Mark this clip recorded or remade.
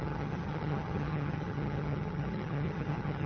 remade